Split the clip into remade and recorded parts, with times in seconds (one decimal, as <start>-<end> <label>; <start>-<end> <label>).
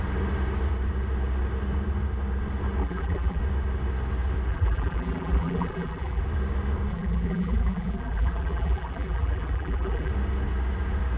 0.0-2.8 recorded; 2.8-3.4 remade; 3.4-4.5 recorded; 4.5-6.2 remade; 6.2-6.9 recorded; 6.9-10.1 remade; 10.1-11.2 recorded